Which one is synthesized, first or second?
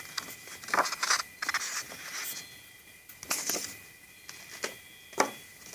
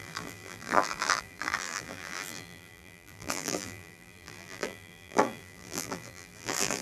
second